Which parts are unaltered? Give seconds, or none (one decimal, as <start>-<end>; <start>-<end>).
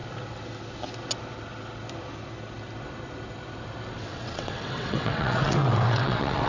0.0-3.9